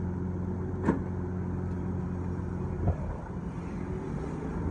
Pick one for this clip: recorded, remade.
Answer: recorded